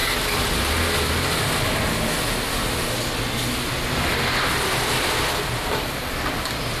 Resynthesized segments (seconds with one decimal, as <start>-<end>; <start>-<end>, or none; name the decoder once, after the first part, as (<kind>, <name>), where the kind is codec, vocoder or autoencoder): none

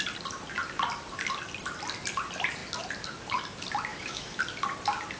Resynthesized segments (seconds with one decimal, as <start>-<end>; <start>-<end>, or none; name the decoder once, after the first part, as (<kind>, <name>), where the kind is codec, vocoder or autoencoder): 3.9-4.4 (autoencoder, DAC-VAE)

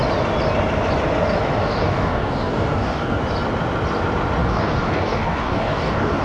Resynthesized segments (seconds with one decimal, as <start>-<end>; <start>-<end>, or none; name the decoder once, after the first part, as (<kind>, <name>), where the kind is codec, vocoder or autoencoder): 1.6-3.2 (codec, DAC); 4.4-6.2

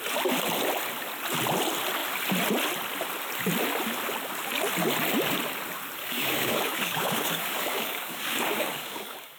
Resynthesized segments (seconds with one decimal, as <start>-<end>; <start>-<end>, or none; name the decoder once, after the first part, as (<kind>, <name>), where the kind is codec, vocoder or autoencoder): 6.0-9.4 (codec, DAC)

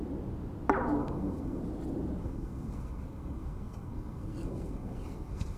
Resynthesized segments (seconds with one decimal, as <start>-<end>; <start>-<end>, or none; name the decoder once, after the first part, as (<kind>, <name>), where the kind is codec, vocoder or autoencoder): 1.0-1.6 (codec, SNAC); 2.2-5.6

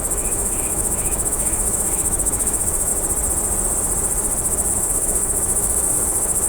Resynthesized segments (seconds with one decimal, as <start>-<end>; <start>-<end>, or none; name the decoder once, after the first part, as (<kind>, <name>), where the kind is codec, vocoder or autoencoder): 0.0-2.9 (autoencoder, DAC-VAE); 4.7-6.5

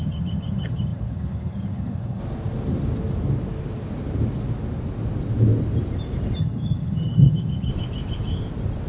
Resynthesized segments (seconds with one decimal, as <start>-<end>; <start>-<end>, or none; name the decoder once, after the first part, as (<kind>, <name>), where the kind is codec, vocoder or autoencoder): 0.0-2.2 (vocoder, HiFi-GAN); 6.4-7.7

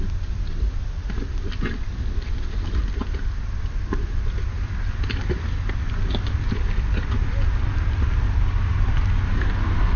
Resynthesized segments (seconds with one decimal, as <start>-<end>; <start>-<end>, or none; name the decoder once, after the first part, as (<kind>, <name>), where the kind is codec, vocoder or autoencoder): none